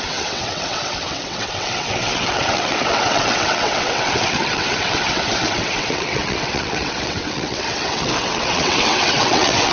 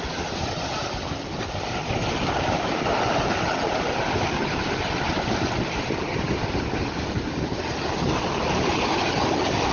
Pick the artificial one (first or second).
first